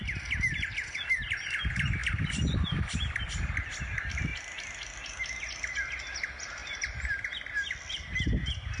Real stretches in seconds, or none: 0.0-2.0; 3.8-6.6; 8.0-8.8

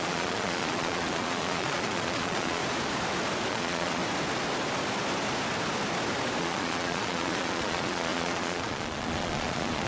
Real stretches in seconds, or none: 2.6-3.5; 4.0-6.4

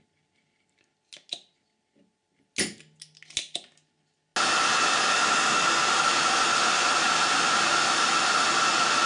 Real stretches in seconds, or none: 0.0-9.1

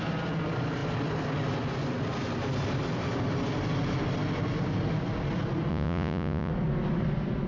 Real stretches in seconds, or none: 0.0-5.7; 6.5-7.5

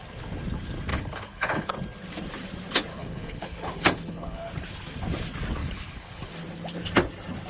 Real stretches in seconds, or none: 0.0-0.9; 1.7-2.9; 4.5-5.6; 6.3-7.5